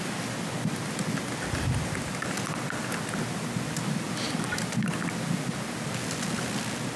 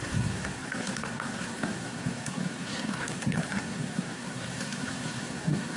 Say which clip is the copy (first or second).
second